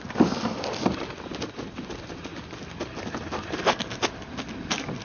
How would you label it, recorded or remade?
recorded